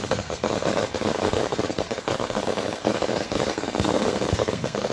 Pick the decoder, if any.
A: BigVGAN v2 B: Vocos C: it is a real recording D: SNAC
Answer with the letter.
D